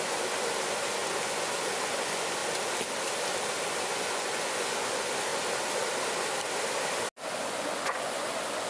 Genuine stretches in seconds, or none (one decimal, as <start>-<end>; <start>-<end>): 2.4-3.7; 5.3-7.3